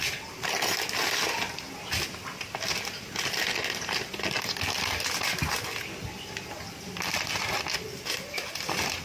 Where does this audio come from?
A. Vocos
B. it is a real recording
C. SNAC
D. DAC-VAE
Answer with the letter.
B